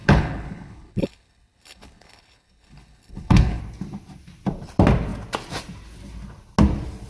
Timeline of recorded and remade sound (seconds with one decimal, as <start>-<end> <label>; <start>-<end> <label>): 0.0-3.6 remade; 3.6-7.1 recorded